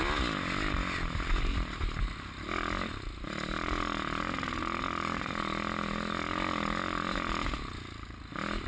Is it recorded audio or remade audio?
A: recorded